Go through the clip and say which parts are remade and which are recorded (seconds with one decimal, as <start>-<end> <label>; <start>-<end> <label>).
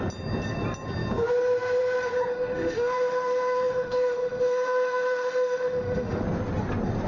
0.0-2.3 recorded; 2.3-6.2 remade; 6.2-7.1 recorded